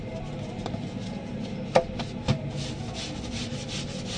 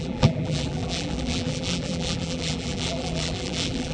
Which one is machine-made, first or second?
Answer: second